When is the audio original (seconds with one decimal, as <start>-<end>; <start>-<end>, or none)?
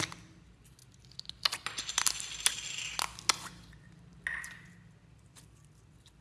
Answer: 0.0-6.2